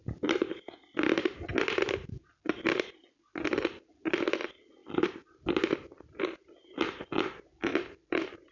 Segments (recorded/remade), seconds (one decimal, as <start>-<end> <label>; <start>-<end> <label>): 0.0-1.9 remade; 1.9-4.8 recorded; 4.8-6.2 remade; 6.2-7.7 recorded; 7.7-8.5 remade